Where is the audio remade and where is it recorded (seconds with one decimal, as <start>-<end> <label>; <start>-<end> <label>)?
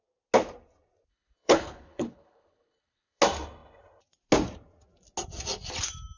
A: 0.0-1.1 recorded; 1.1-3.2 remade; 3.2-6.2 recorded